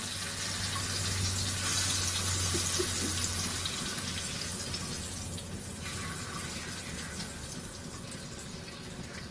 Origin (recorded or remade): recorded